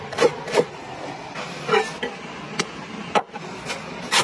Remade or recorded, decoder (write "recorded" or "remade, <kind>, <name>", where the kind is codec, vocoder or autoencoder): recorded